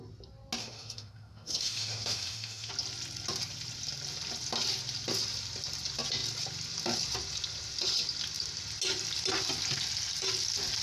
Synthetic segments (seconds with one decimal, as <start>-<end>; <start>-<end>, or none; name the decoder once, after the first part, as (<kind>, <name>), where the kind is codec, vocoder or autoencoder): 0.6-2.7 (autoencoder, DAC-VAE)